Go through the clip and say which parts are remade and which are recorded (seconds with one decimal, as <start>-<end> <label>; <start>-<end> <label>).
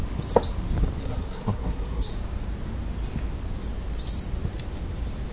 0.0-1.0 recorded; 1.0-2.1 remade; 2.1-5.3 recorded